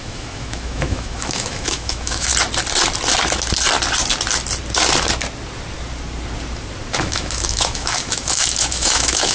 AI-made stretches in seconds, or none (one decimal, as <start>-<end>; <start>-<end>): 0.0-2.3; 7.0-9.3